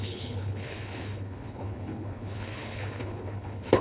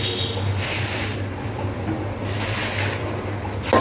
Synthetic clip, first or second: first